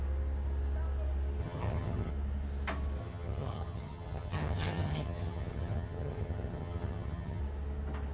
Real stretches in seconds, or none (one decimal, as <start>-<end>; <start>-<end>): 0.0-1.4; 2.1-3.0; 7.4-8.1